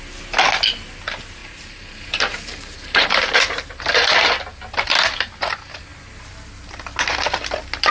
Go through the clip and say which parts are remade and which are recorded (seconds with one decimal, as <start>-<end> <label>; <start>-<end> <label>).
0.0-1.4 recorded; 1.4-3.8 remade; 3.8-7.9 recorded